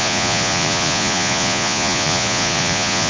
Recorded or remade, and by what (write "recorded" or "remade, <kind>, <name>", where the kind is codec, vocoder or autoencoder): remade, vocoder, Vocos